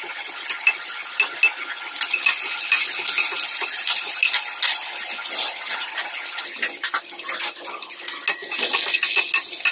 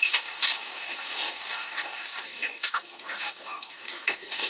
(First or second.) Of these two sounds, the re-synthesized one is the second